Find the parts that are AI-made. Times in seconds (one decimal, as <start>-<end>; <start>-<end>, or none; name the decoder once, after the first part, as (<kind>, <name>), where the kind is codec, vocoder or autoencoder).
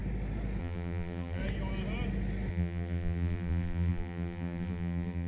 0.6-1.4 (vocoder, BigVGAN v2); 2.5-5.3